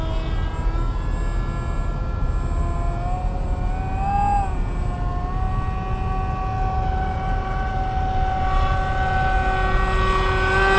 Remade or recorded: recorded